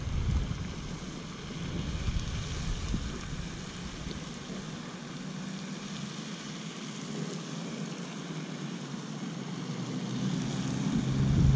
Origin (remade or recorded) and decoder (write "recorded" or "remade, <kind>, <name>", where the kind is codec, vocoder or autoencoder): recorded